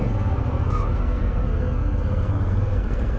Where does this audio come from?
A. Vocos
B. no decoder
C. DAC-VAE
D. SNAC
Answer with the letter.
D